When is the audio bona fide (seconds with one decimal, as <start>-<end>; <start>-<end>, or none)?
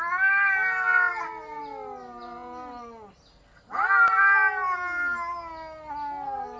0.0-1.1; 1.6-6.6